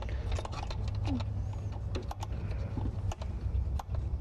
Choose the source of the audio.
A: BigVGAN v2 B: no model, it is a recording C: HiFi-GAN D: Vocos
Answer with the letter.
B